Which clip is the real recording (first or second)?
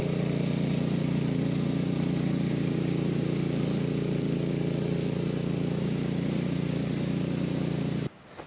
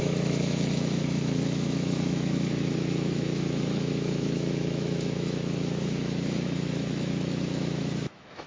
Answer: first